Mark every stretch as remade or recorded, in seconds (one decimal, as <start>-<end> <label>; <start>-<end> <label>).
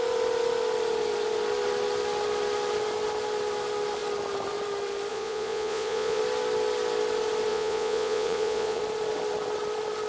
0.0-5.1 recorded; 5.1-6.2 remade; 6.2-7.5 recorded; 7.5-8.8 remade; 8.8-10.1 recorded